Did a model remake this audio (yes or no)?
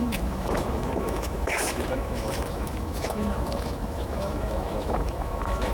yes